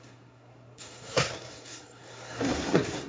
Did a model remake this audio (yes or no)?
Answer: yes